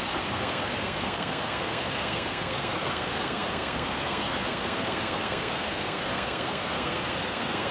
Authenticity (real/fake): fake